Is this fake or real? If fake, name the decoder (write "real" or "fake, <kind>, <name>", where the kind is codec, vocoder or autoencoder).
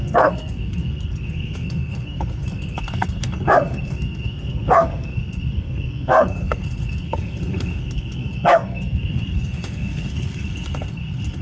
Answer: fake, codec, SNAC